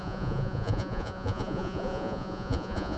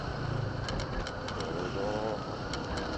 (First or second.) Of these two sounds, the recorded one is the second